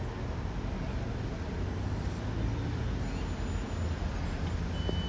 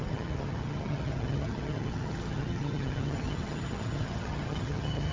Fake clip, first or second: second